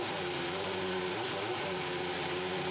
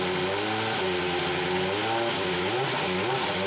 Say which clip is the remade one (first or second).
first